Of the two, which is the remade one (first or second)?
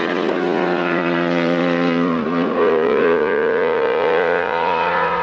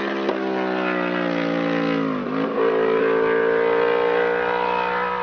first